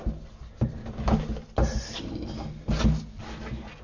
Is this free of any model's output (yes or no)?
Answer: yes